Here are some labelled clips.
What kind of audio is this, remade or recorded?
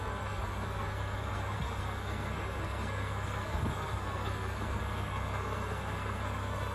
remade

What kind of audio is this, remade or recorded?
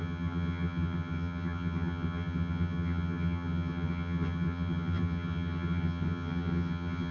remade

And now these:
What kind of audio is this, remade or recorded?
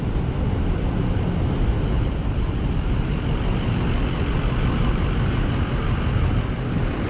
recorded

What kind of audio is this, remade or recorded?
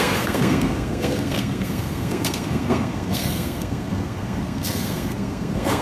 remade